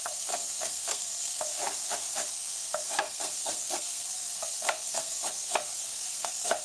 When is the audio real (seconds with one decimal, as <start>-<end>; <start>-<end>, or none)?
1.5-2.3